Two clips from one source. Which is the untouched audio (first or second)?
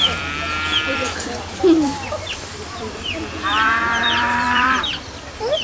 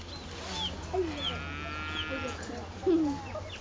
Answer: second